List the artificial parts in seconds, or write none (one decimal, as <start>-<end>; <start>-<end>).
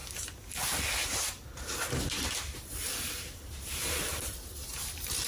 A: 2.7-5.3